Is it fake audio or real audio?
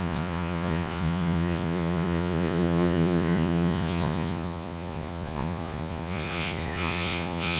fake